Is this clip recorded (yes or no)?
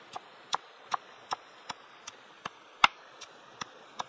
yes